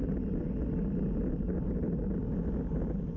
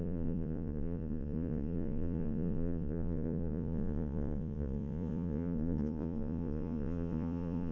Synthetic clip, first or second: second